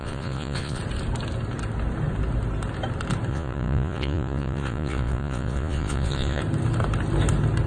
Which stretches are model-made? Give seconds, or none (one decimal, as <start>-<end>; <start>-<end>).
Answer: 0.0-0.8; 3.3-6.4